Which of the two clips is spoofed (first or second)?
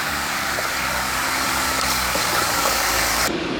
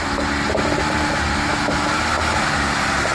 first